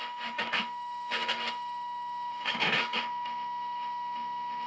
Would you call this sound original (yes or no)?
no